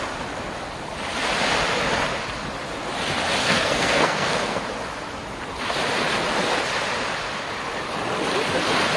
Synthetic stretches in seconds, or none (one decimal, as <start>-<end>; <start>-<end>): 3.4-4.6